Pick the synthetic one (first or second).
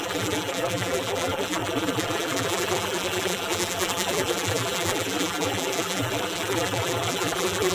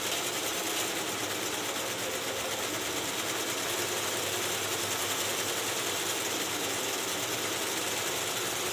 first